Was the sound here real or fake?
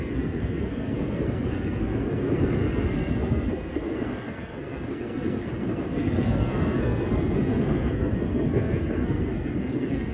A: fake